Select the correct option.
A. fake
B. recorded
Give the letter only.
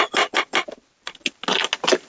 B